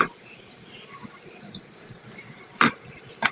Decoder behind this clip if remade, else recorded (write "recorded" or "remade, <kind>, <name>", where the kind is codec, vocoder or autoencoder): remade, vocoder, BigVGAN v2